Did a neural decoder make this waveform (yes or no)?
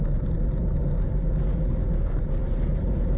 no